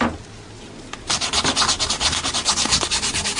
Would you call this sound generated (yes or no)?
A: no